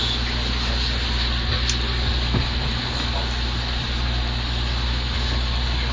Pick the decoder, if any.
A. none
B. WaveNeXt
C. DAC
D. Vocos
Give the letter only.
A